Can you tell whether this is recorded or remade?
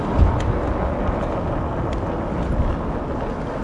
recorded